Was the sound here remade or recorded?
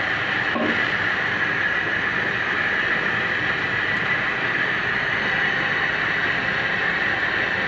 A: recorded